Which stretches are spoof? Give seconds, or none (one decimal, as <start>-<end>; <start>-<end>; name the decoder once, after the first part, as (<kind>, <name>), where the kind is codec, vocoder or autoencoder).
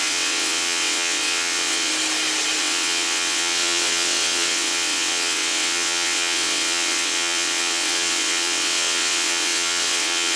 0.0-1.9 (vocoder, WaveNeXt); 2.6-10.4